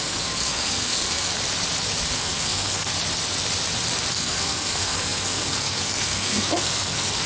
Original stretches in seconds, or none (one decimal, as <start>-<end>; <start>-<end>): 1.3-2.1; 2.9-4.1